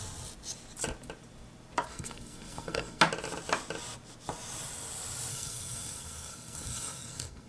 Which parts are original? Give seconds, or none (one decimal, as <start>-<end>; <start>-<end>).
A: 0.0-1.9; 3.0-5.3